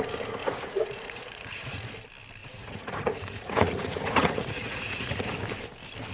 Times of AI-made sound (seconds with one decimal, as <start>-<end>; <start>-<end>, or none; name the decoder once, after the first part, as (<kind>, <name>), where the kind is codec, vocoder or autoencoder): 0.4-1.9 (vocoder, Vocos); 2.4-5.3